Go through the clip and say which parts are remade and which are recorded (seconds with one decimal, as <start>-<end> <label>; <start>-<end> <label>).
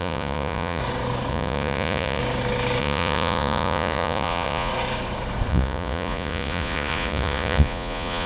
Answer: 0.0-0.8 remade; 0.8-1.3 recorded; 1.3-2.2 remade; 2.2-2.8 recorded; 2.8-4.7 remade; 4.7-5.5 recorded; 5.5-8.3 remade